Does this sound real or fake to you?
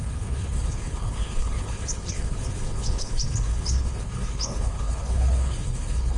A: fake